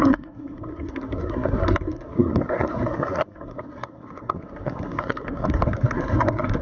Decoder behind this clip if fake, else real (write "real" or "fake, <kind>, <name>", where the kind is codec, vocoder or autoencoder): fake, codec, SNAC